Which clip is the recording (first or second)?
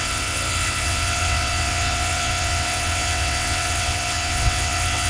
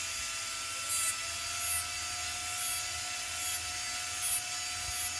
second